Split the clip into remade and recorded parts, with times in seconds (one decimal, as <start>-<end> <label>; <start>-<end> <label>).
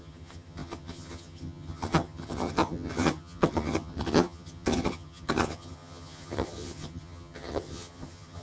0.0-8.4 remade